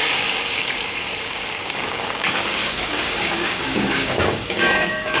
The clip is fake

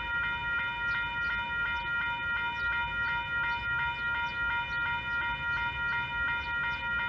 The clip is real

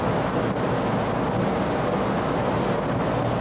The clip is real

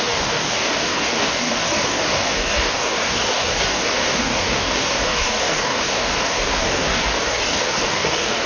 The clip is fake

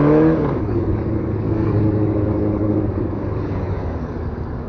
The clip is fake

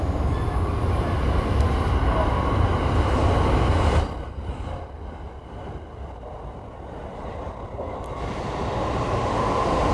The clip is real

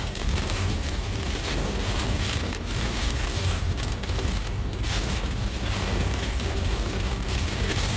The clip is fake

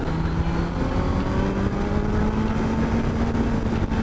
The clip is real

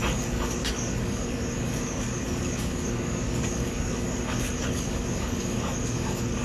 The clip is fake